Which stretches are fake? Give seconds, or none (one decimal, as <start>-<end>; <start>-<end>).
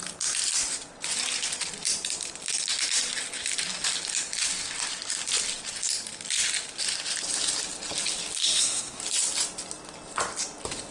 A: 8.4-9.0